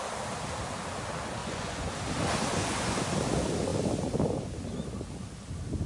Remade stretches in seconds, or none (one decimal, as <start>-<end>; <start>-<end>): 1.4-1.9; 2.5-3.0